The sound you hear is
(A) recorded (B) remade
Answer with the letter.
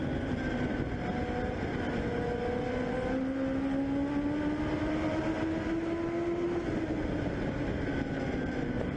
A